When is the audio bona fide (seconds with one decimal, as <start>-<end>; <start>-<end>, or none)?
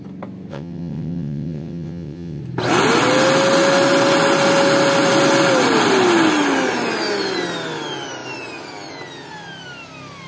0.0-0.5; 2.4-10.3